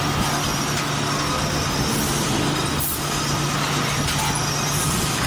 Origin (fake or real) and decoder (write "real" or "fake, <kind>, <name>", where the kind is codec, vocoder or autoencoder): real